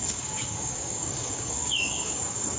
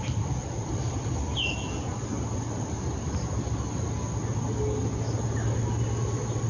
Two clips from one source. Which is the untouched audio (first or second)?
second